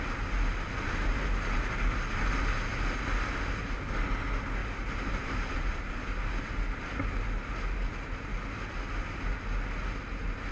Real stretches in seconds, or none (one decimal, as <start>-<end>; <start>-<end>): 0.0-4.6; 5.8-10.5